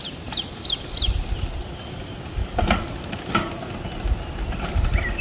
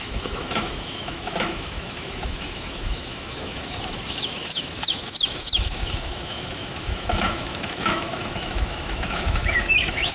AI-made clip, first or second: second